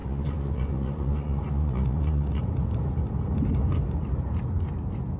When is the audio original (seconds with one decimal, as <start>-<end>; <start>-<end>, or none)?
2.4-5.2